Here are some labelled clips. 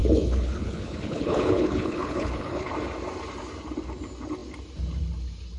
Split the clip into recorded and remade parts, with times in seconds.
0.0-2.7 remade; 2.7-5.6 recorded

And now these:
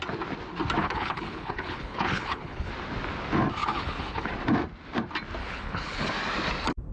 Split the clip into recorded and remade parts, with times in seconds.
0.0-0.8 recorded; 0.8-2.7 remade; 2.7-3.6 recorded; 3.6-4.3 remade; 4.3-5.4 recorded; 5.4-6.1 remade; 6.1-6.9 recorded